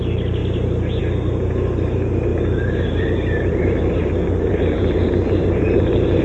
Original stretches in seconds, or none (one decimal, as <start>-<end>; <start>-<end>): 0.0-2.3